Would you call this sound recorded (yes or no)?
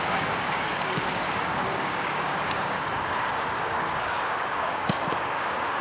no